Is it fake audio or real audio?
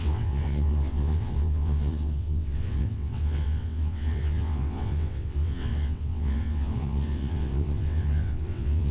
fake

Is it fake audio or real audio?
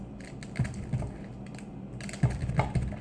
real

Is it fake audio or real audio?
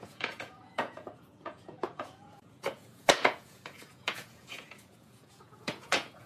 fake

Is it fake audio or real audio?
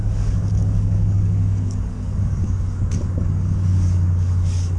fake